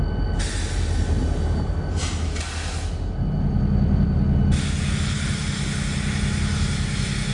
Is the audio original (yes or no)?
yes